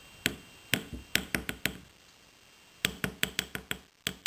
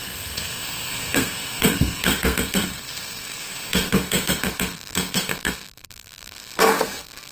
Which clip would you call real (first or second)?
first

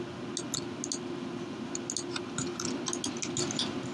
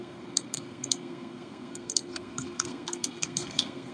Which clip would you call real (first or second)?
first